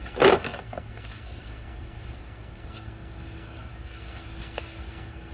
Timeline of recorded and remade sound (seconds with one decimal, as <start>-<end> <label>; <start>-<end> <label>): 0.0-5.3 remade